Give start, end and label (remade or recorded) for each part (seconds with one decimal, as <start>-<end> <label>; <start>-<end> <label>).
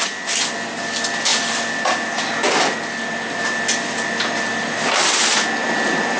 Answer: 0.0-6.2 recorded